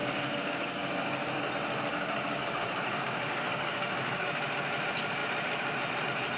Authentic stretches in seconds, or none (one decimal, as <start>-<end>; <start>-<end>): 1.5-1.9; 4.4-6.4